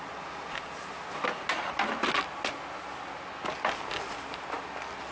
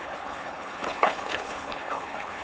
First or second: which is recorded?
first